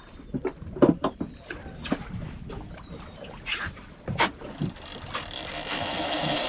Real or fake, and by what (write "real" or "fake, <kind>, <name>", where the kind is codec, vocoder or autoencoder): real